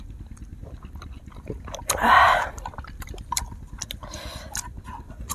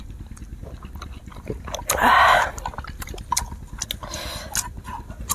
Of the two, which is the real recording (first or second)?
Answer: second